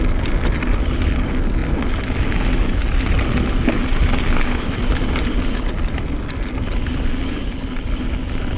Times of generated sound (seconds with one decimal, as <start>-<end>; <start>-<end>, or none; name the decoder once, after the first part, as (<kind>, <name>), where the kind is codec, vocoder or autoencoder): none